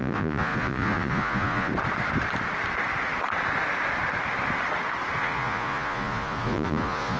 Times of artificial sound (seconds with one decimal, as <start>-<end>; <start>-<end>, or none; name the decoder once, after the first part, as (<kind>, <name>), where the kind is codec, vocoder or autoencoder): 0.0-1.7 (vocoder, Vocos); 5.2-7.2